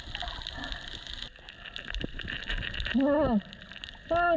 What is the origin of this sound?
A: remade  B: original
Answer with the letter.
B